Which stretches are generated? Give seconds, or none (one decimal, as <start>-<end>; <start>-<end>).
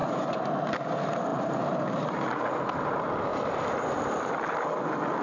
0.0-0.6; 1.3-1.8; 3.3-4.1